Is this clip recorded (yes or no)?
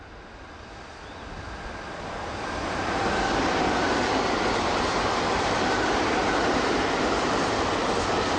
no